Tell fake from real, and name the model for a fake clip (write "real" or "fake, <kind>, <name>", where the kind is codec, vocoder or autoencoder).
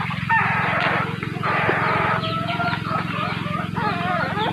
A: real